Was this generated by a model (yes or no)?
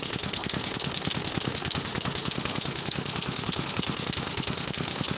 yes